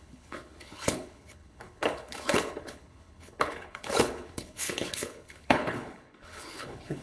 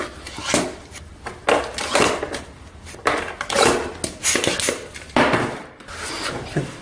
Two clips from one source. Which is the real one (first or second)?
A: second